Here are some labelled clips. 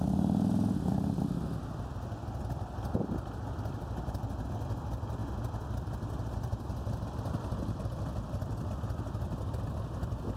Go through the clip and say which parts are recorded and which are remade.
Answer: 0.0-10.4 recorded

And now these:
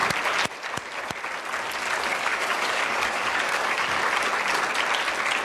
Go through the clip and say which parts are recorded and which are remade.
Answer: 0.0-2.1 recorded; 2.1-4.0 remade; 4.0-5.4 recorded

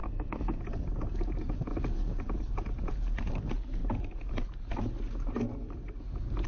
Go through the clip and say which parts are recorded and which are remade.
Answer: 0.0-0.6 remade; 0.6-6.5 recorded

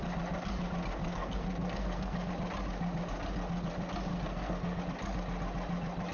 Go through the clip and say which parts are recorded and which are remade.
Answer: 0.0-1.0 recorded; 1.0-2.3 remade; 2.3-4.1 recorded; 4.1-4.8 remade; 4.8-6.1 recorded

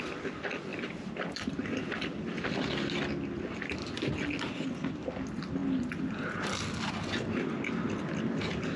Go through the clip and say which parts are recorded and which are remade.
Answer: 0.0-8.8 recorded

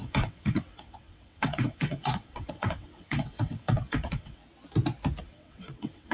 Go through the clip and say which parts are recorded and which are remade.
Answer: 0.0-4.4 remade; 4.4-5.2 recorded; 5.2-6.1 remade

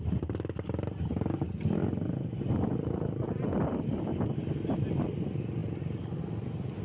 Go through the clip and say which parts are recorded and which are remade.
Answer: 0.0-6.8 recorded